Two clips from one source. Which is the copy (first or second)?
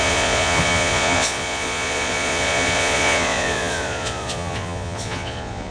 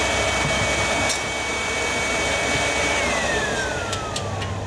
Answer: first